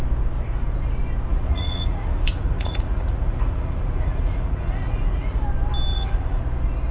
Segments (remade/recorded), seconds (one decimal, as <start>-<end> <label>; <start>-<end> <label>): 0.0-1.3 recorded; 1.3-5.4 remade; 5.4-5.9 recorded; 5.9-6.4 remade; 6.4-6.9 recorded